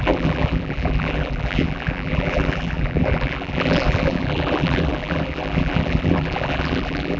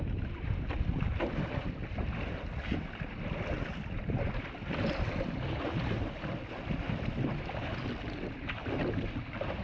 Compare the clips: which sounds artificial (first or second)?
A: first